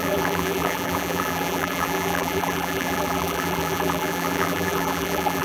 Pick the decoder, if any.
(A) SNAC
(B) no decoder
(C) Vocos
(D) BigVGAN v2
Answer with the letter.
D